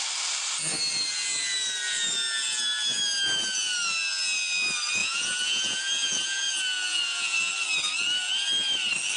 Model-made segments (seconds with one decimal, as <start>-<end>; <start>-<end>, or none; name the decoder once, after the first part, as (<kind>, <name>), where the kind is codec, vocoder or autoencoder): 5.0-6.5 (vocoder, Vocos); 6.9-7.5